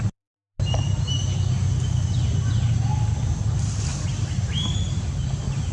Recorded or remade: recorded